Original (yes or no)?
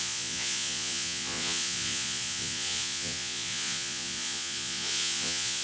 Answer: no